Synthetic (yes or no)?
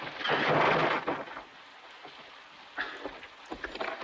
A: no